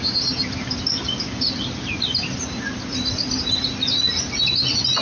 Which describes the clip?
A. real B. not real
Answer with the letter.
A